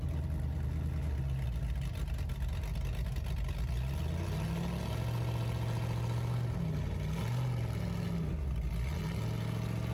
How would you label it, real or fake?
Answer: real